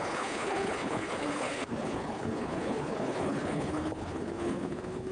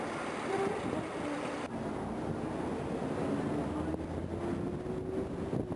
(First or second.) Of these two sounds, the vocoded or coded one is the first